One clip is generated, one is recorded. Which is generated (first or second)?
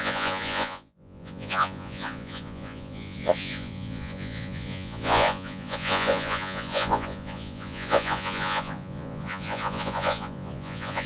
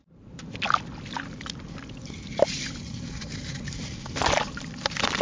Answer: first